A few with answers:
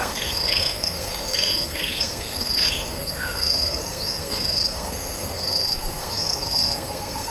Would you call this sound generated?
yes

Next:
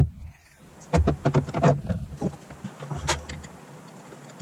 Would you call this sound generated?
no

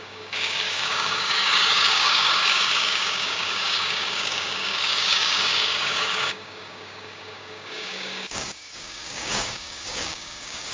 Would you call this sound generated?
yes